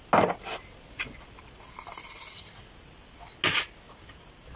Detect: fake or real real